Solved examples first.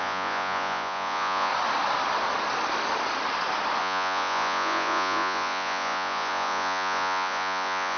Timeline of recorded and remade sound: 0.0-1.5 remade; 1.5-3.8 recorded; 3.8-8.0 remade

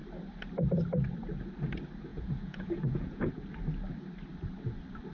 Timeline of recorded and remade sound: 0.0-2.1 recorded; 2.1-3.3 remade; 3.3-5.1 recorded

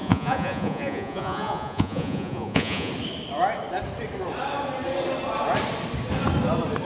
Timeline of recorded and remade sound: 0.0-2.9 remade; 2.9-6.9 recorded